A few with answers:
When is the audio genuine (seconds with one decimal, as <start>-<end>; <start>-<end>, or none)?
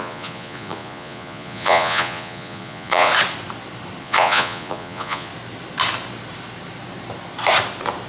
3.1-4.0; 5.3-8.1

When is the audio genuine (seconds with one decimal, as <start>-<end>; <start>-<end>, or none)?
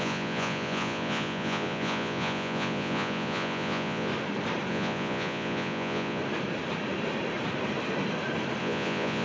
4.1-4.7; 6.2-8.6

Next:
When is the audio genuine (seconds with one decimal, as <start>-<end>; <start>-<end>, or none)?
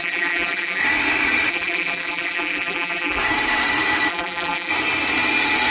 0.8-1.5; 3.2-4.1; 4.7-5.7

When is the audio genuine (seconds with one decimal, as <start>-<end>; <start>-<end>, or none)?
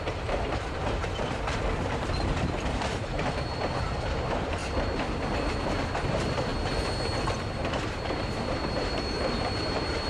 4.6-6.0; 6.5-7.5